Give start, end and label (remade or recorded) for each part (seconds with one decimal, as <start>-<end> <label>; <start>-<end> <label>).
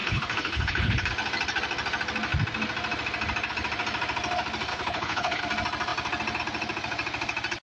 0.0-1.1 remade; 1.1-4.7 recorded; 4.7-5.4 remade; 5.4-7.6 recorded